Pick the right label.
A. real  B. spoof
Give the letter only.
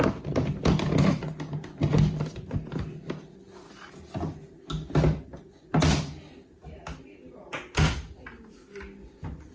A